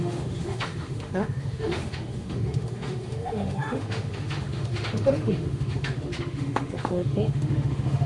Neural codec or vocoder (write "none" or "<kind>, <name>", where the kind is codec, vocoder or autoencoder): autoencoder, DAC-VAE